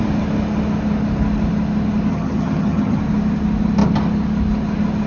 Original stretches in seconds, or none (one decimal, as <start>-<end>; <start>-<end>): 0.0-2.1; 3.0-5.1